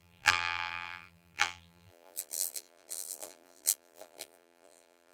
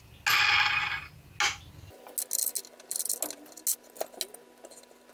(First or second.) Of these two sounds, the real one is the second